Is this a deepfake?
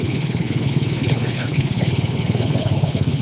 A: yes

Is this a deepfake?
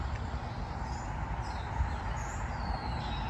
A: no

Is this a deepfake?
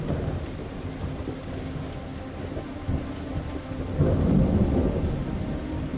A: no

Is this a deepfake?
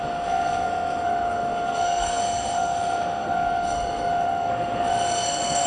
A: yes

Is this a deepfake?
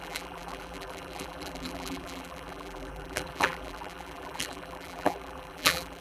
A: yes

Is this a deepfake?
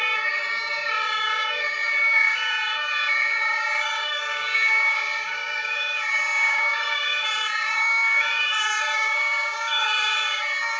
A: yes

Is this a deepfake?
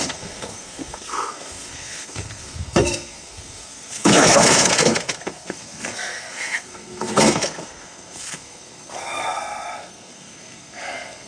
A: yes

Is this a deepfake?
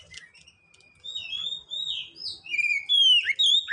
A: no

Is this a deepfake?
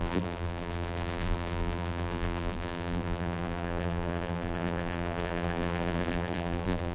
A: yes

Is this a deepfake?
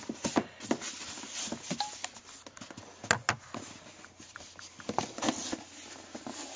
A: no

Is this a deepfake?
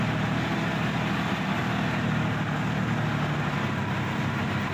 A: no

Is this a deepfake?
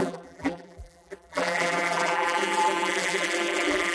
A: yes